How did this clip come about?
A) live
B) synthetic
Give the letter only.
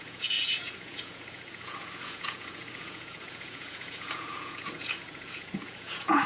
B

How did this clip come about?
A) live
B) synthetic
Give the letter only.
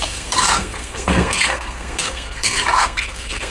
B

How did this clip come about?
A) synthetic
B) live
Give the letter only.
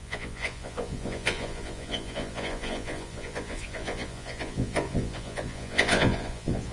A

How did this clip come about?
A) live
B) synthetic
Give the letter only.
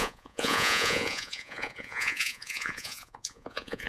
B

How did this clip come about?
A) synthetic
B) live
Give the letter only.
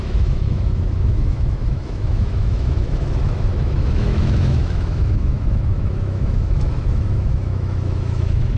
A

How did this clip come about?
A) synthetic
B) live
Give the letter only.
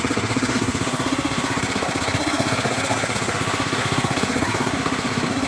A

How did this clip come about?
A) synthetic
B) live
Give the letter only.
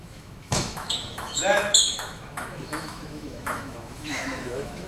A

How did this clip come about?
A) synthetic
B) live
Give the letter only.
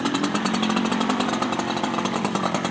B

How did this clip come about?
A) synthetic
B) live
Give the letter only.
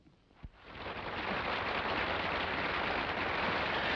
B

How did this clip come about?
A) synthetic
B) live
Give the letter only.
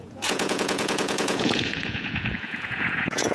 A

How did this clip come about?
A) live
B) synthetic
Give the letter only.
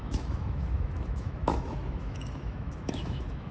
B